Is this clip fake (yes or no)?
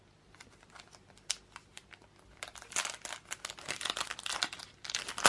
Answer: no